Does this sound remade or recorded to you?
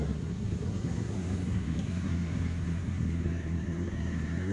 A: remade